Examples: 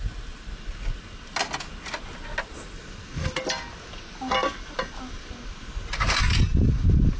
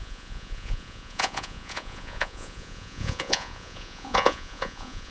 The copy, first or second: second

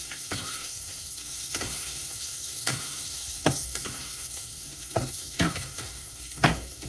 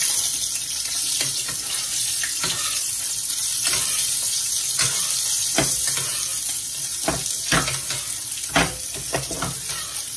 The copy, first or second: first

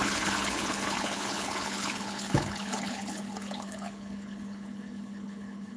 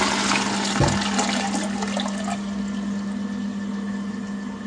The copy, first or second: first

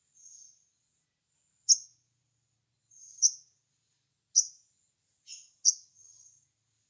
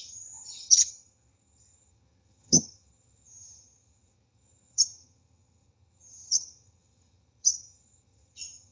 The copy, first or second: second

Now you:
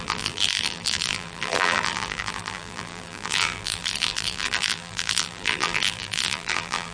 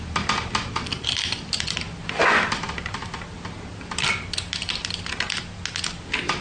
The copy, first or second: first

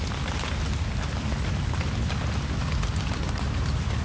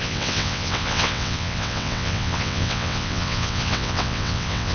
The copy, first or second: second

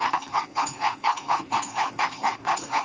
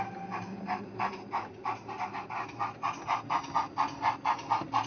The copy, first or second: first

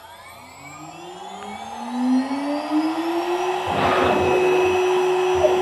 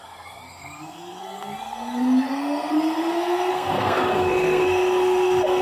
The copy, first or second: second